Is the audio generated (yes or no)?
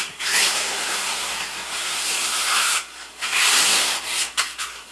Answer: yes